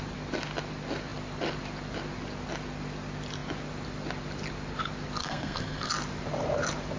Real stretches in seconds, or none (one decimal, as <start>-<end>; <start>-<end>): 0.0-5.2; 5.9-7.0